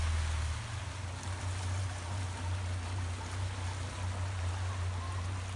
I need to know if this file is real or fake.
real